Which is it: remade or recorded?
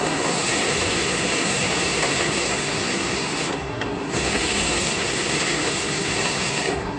remade